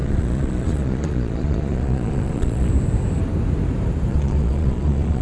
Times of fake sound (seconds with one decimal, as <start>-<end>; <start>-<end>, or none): 0.0-2.7; 4.1-5.2